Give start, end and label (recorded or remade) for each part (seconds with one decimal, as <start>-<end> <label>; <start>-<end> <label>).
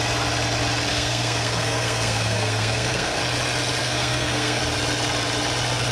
0.0-0.9 recorded; 0.9-3.2 remade; 3.2-3.8 recorded; 3.8-4.6 remade; 4.6-5.9 recorded